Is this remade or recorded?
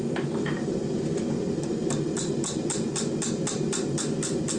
recorded